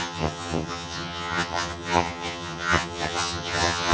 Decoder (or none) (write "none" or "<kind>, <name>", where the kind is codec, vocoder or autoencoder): vocoder, HiFi-GAN